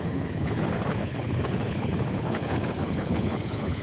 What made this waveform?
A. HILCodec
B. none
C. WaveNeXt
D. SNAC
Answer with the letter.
A